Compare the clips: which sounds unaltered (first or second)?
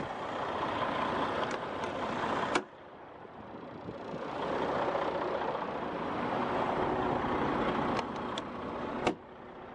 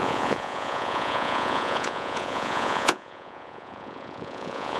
first